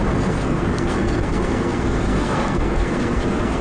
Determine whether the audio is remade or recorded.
remade